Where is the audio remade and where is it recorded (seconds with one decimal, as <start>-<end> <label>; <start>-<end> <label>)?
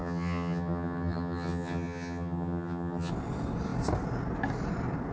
0.0-3.1 remade; 3.1-5.1 recorded